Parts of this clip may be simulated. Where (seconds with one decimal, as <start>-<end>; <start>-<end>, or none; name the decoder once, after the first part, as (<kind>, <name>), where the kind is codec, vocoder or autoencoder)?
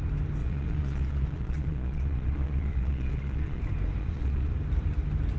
0.4-3.6 (vocoder, Vocos); 4.0-4.5